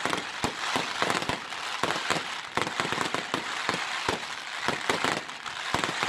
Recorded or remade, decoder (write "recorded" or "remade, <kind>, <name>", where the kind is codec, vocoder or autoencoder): recorded